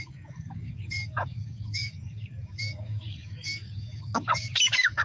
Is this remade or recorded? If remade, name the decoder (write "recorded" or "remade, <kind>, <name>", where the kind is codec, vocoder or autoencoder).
remade, codec, DAC